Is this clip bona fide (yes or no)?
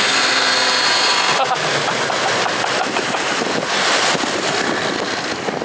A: yes